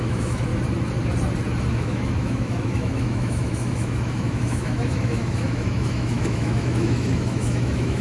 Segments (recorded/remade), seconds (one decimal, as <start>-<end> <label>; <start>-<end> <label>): 0.0-0.5 remade; 0.5-1.7 recorded; 1.7-8.0 remade